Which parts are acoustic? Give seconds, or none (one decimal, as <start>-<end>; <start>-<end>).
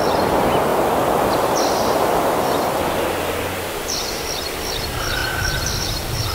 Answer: 0.0-6.3